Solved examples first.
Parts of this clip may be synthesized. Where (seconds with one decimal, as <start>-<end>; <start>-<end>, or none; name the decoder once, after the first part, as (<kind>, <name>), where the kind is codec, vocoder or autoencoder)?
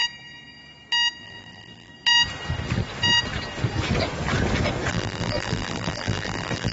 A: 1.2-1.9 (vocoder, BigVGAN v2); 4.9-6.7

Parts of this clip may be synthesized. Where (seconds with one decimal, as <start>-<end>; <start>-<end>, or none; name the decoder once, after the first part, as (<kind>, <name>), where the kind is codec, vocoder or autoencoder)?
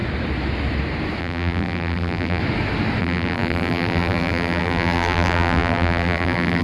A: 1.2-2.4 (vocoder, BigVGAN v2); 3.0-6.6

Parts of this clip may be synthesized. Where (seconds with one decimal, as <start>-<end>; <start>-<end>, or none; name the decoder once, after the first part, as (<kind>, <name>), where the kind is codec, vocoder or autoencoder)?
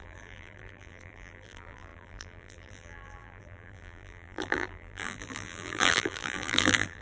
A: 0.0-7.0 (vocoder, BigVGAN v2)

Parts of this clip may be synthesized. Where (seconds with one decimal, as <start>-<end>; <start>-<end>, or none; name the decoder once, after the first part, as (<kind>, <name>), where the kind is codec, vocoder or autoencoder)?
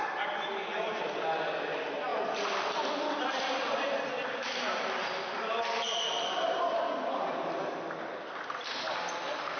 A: 2.1-6.4 (vocoder, BigVGAN v2)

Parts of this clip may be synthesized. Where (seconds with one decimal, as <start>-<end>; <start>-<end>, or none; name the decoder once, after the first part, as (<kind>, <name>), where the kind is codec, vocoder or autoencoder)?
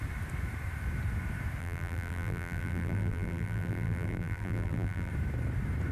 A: 1.6-5.1 (vocoder, BigVGAN v2)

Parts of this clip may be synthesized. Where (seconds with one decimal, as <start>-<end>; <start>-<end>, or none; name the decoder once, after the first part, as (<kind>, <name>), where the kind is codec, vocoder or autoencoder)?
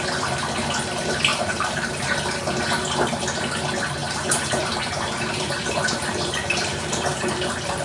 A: 1.3-1.9 (vocoder, BigVGAN v2); 4.0-7.3